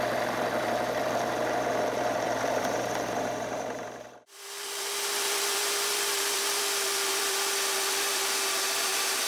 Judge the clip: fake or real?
fake